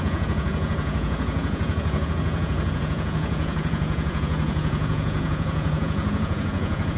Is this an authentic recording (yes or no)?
no